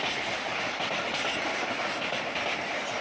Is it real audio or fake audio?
real